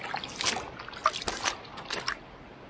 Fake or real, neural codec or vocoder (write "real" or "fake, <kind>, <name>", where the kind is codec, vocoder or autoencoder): real